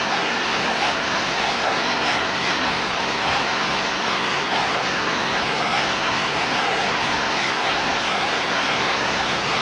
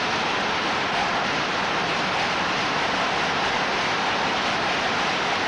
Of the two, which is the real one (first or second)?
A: second